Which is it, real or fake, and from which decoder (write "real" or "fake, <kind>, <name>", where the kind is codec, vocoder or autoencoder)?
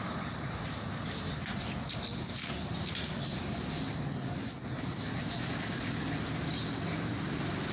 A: real